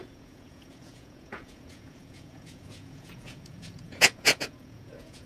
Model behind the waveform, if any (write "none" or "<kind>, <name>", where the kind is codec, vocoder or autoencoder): vocoder, Vocos